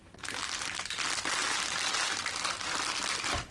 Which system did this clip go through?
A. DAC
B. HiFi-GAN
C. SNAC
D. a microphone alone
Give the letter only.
D